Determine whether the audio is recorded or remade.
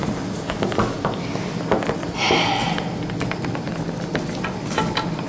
recorded